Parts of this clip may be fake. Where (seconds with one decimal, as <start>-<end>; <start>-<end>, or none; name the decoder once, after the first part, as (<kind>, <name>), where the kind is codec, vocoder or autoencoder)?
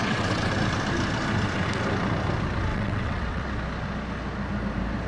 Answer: 0.0-0.5 (vocoder, WaveNeXt); 2.7-3.5